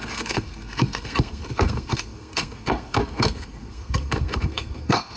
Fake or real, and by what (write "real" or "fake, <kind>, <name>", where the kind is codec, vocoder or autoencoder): fake, codec, SNAC